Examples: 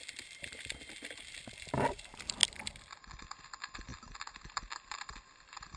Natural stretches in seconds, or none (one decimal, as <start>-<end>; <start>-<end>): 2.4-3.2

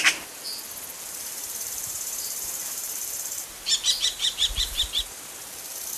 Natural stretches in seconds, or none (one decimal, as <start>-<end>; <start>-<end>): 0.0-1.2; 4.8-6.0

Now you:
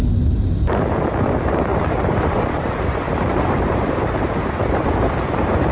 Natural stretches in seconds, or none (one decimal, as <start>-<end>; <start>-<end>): 0.0-1.7; 4.5-5.7